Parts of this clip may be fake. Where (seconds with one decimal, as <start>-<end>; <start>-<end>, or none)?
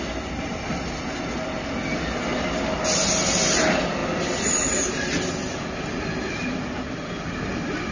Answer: none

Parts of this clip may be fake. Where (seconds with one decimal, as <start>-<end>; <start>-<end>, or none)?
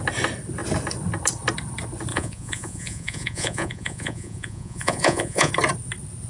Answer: 2.1-5.5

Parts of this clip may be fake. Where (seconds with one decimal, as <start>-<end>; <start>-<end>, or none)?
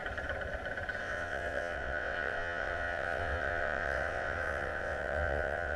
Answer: 1.0-5.8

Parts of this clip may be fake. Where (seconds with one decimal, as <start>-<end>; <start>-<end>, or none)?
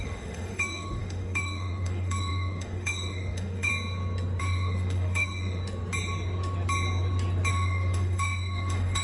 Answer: 0.0-3.7; 4.4-5.6; 7.5-9.0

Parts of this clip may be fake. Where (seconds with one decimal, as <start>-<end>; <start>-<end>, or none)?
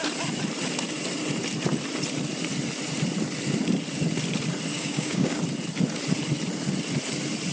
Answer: 4.7-5.4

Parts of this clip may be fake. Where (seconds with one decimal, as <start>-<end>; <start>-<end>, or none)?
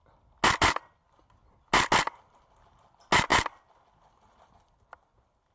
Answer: none